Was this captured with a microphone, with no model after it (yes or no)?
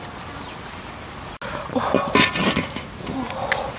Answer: yes